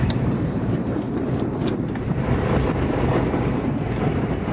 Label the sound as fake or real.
fake